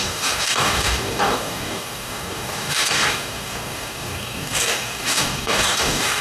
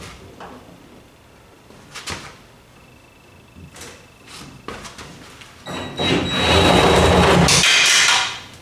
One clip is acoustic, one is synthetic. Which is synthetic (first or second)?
first